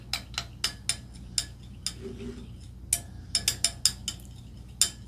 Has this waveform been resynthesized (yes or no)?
no